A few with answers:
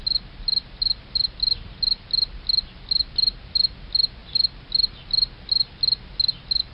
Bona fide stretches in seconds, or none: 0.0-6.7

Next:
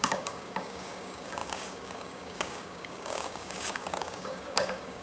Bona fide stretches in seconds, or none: none

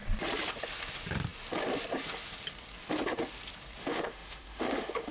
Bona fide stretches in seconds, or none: 0.0-3.8

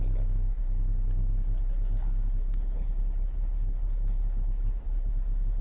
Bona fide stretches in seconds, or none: 0.0-2.4; 5.1-5.6

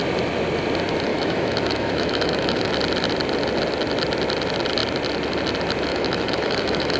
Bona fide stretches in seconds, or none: 0.0-1.1; 2.7-5.9